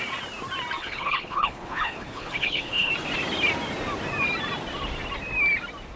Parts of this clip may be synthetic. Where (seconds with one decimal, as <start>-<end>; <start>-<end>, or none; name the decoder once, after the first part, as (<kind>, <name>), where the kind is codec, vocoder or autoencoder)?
0.8-2.9 (codec, HILCodec)

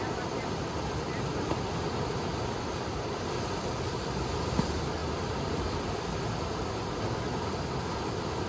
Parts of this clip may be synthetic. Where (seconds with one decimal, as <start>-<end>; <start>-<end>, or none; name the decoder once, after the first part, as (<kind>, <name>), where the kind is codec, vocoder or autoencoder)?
2.3-3.4 (vocoder, BigVGAN v2); 5.0-6.6

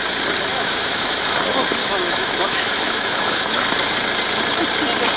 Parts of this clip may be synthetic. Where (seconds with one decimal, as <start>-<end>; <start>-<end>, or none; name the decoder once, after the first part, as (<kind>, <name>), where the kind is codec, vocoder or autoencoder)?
0.5-1.2 (autoencoder, DAC-VAE); 1.8-3.6

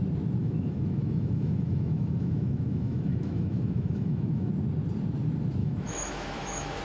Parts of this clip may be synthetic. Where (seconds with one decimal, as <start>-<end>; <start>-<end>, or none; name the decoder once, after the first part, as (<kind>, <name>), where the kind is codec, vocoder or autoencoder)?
0.4-4.5 (autoencoder, DAC-VAE); 5.6-6.8

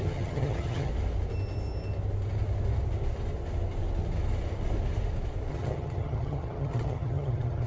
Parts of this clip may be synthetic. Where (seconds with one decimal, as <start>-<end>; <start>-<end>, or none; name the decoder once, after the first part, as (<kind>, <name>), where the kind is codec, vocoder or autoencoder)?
0.0-0.9 (vocoder, HiFi-GAN); 5.5-7.7

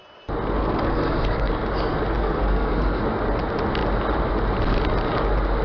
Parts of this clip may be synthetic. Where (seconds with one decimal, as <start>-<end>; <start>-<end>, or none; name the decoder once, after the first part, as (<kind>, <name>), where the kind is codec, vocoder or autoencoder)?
0.6-1.5 (codec, SNAC); 2.2-3.0

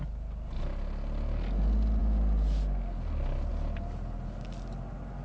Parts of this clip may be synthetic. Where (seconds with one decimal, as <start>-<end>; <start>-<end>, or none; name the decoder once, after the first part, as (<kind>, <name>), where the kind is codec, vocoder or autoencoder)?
none

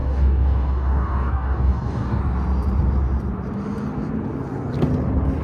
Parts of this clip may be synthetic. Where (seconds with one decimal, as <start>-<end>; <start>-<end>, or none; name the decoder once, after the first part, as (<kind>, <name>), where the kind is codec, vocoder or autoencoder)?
0.0-2.2 (codec, DAC)